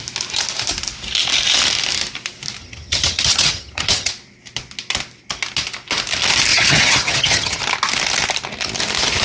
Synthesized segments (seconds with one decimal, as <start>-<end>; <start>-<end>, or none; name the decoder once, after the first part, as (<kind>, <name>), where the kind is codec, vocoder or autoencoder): 2.6-4.1 (vocoder, HiFi-GAN); 6.5-7.6